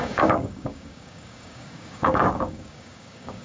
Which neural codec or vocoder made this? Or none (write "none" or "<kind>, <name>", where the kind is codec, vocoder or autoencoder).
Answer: codec, DAC